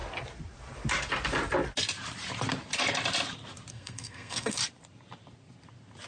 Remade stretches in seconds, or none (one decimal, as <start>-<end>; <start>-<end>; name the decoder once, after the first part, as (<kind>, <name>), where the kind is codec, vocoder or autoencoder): 3.7-4.6 (codec, SNAC)